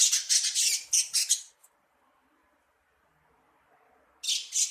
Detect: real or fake real